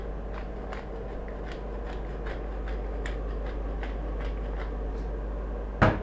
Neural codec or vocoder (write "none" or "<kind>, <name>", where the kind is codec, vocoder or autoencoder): none